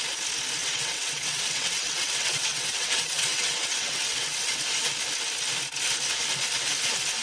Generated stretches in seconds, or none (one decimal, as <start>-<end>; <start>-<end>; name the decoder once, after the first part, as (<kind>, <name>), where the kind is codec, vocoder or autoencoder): 0.6-4.6 (vocoder, WaveNeXt)